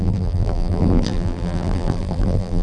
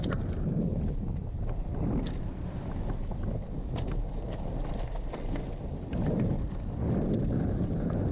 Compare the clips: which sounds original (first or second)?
second